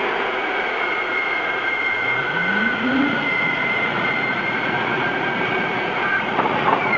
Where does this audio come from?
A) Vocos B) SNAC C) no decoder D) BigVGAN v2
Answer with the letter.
A